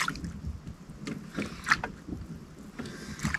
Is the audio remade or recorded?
recorded